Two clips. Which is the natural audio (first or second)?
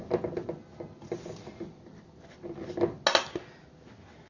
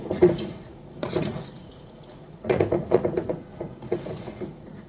first